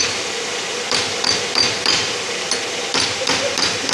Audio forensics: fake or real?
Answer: fake